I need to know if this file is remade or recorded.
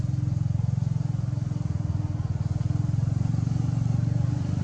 recorded